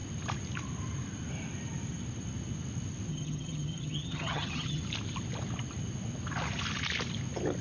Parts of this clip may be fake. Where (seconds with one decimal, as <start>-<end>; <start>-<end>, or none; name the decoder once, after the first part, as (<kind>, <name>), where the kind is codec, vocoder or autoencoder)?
3.1-4.8 (vocoder, HiFi-GAN)

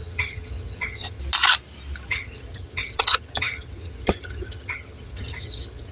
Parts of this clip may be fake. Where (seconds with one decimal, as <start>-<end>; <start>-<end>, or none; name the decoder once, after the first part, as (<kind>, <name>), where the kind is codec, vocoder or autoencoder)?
0.0-1.2 (vocoder, HiFi-GAN); 2.1-5.9

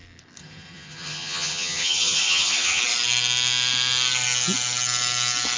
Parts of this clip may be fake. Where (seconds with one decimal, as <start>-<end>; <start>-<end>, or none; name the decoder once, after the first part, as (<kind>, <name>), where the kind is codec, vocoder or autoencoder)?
0.4-2.8 (vocoder, HiFi-GAN)